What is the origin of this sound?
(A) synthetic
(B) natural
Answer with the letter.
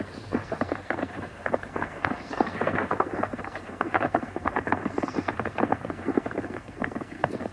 A